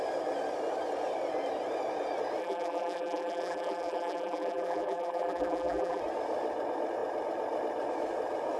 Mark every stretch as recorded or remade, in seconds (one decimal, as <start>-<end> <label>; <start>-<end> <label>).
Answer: 0.0-2.4 recorded; 2.4-6.0 remade; 6.0-8.6 recorded